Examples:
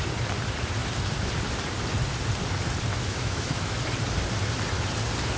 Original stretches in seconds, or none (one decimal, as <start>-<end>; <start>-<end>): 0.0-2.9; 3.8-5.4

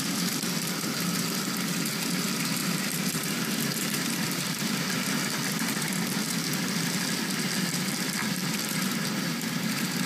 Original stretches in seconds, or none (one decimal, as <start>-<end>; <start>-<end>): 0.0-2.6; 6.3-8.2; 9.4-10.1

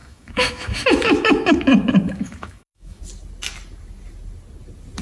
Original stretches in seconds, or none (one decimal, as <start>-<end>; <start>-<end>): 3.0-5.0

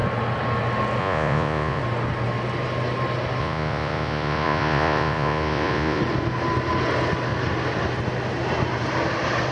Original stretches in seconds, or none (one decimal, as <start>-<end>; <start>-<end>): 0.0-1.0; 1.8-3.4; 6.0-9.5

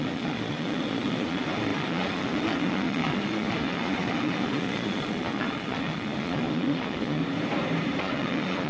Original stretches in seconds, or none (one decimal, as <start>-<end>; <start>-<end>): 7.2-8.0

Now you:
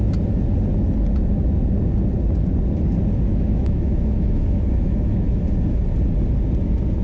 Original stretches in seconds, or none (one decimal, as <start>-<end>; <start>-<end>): 0.0-3.3; 5.4-7.0